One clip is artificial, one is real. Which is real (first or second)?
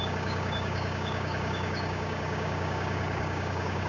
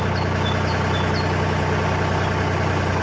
second